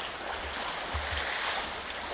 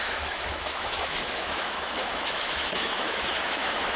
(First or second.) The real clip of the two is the first